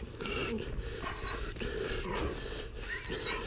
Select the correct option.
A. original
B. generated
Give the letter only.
A